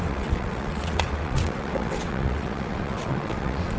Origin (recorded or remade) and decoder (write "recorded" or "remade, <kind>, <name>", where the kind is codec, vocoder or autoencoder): remade, vocoder, WaveNeXt